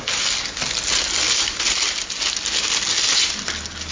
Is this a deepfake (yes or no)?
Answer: no